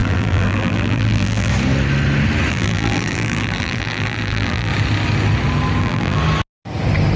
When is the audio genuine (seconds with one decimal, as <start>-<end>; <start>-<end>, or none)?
1.5-2.5; 4.7-5.8; 6.2-7.2